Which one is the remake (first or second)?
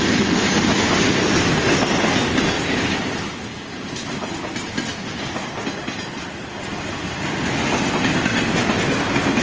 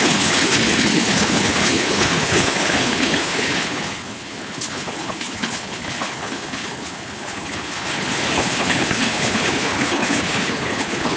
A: second